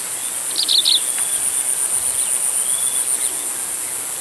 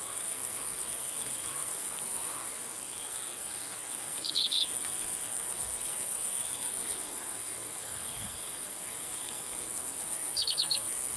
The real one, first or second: first